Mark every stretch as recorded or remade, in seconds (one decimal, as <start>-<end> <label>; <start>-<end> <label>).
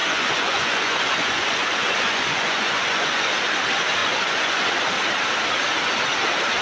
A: 0.0-3.3 remade; 3.3-4.0 recorded; 4.0-4.8 remade; 4.8-6.6 recorded